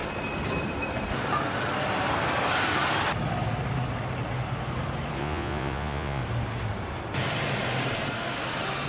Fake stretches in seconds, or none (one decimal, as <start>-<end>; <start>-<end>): 5.2-6.2

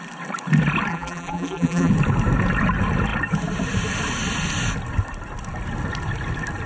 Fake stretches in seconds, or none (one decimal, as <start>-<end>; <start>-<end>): 0.9-1.9

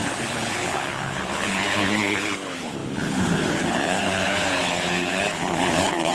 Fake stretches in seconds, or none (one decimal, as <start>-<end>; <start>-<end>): 0.0-6.1

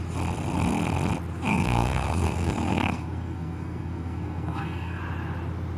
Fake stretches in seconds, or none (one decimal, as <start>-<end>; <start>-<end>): 1.5-5.0

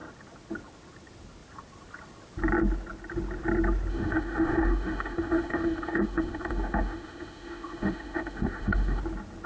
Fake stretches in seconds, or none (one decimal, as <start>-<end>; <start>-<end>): 3.9-9.0

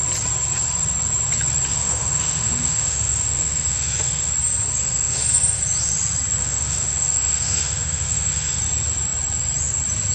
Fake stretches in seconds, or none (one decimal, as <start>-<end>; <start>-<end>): 1.7-4.3; 4.8-5.6; 6.4-8.6

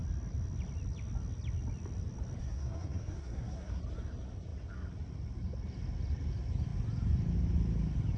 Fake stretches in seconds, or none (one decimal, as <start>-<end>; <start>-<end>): 2.4-3.8

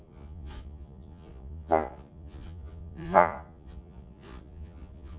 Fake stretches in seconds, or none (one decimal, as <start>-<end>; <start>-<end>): 0.0-5.2